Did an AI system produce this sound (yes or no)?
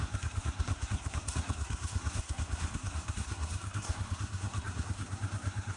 yes